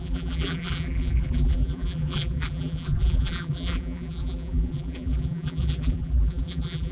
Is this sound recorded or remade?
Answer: remade